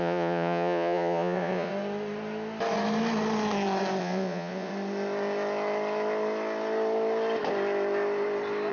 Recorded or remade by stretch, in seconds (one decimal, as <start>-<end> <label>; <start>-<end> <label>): 0.0-1.7 remade; 1.7-4.0 recorded; 4.0-4.7 remade; 4.7-8.7 recorded